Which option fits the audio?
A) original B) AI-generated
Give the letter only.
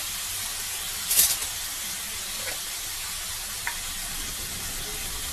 A